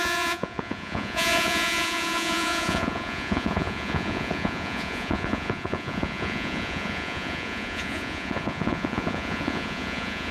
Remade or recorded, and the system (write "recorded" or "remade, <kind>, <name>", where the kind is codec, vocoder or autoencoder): remade, vocoder, Vocos